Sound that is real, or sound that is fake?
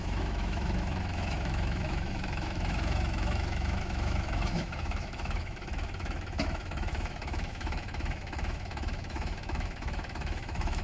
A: fake